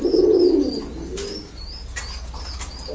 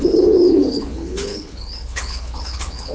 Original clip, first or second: first